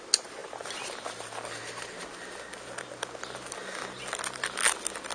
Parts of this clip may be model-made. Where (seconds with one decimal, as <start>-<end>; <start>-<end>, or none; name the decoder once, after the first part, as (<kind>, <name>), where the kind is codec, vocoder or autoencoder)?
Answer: none